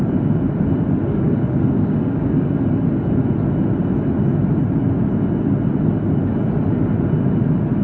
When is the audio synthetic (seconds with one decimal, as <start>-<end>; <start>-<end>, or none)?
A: 1.0-2.5